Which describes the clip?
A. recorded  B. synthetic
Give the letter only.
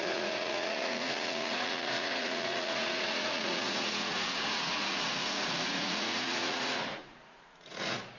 B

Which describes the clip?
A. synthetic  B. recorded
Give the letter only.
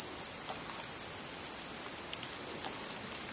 B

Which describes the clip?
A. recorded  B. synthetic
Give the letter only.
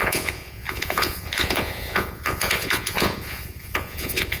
B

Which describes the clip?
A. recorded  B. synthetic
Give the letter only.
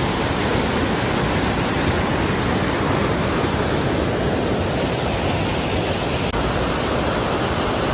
A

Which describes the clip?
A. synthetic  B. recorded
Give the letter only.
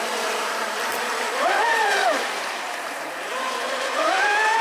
A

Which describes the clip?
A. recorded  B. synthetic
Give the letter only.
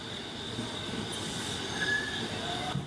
A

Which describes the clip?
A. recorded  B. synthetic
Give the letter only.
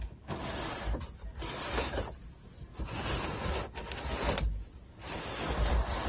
A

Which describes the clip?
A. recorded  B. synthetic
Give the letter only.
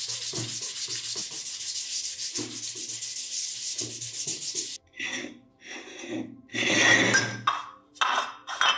A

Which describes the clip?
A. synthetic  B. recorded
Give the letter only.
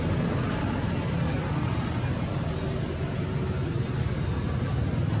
B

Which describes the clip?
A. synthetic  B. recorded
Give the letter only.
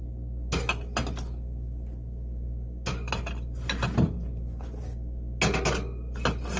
B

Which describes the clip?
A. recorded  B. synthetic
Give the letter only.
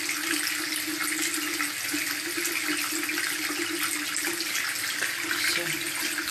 A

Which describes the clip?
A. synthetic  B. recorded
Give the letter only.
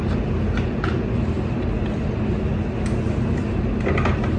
B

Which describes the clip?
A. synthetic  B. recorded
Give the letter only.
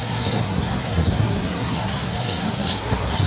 A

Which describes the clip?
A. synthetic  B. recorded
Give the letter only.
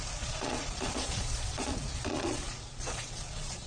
A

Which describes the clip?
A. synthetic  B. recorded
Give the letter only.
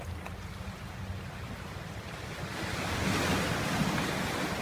B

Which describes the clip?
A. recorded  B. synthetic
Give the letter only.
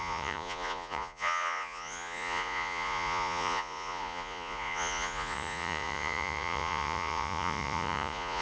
B